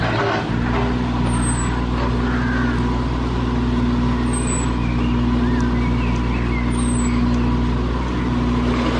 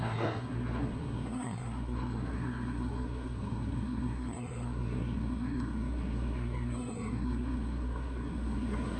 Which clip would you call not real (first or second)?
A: second